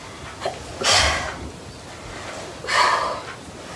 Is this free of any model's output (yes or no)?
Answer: yes